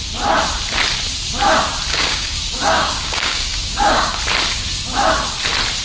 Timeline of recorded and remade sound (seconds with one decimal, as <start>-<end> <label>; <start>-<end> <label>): 0.0-1.9 recorded; 1.9-4.2 remade; 4.2-5.8 recorded